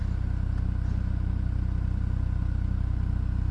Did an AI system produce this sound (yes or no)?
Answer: no